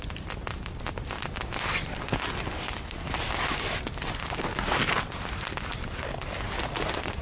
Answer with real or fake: real